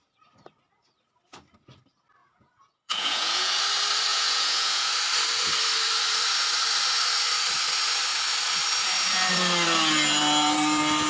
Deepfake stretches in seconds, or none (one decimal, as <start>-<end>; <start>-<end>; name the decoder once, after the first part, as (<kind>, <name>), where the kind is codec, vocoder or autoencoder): 2.2-3.5 (vocoder, Vocos); 4.1-4.9